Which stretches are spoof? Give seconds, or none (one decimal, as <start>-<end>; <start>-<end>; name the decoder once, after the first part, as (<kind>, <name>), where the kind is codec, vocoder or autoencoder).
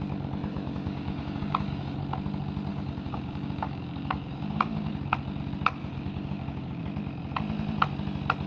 0.5-2.0 (codec, DAC); 2.7-4.9; 5.8-6.8